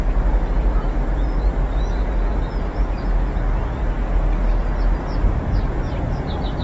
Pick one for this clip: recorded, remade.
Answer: recorded